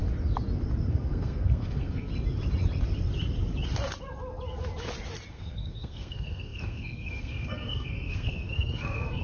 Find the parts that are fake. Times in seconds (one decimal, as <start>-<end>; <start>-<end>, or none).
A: 0.9-2.1; 5.3-9.2